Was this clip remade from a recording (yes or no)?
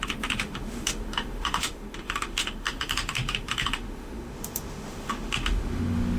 yes